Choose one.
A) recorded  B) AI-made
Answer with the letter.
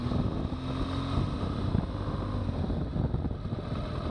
A